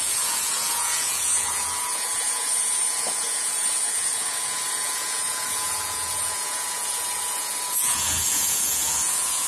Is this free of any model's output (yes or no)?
no